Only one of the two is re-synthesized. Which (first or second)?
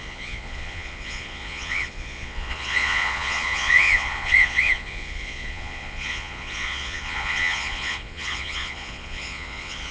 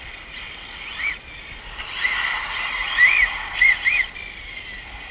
first